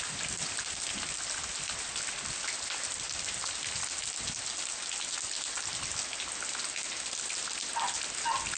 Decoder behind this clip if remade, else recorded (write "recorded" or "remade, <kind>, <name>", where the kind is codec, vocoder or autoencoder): recorded